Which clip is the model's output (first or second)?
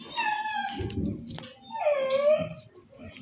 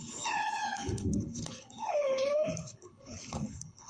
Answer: second